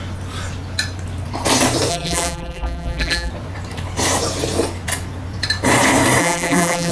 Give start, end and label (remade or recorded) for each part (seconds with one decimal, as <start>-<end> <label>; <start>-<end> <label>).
0.0-1.9 recorded; 1.9-3.3 remade; 3.3-6.2 recorded; 6.2-6.9 remade